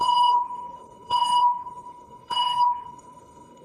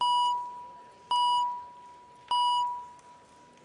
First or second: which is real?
second